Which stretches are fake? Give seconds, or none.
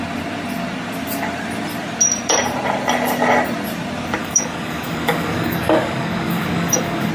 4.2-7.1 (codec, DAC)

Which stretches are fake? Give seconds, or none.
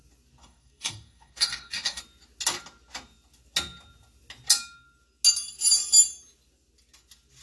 0.4-2.0 (codec, DAC)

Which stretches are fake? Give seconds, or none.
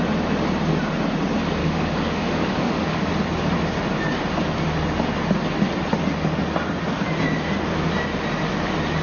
1.6-3.1 (codec, DAC)